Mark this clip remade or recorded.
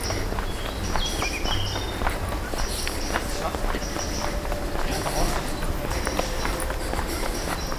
recorded